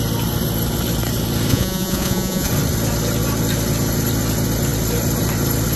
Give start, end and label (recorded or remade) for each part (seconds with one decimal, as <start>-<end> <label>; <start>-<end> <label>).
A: 0.0-1.5 recorded; 1.5-2.5 remade; 2.5-5.8 recorded